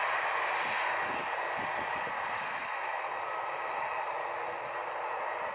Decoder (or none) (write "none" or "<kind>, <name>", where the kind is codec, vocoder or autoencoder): none